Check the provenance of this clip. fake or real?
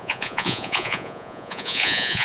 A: fake